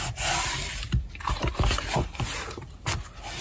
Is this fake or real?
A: real